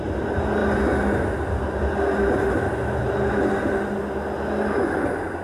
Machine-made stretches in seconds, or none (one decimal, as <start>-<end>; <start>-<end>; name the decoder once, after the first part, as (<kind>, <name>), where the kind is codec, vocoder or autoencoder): none